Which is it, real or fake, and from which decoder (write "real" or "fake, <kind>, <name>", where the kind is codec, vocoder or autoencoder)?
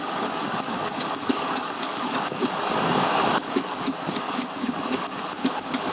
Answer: fake, codec, DAC